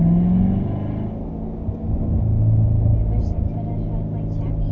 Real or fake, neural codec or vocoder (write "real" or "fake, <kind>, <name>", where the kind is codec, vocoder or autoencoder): real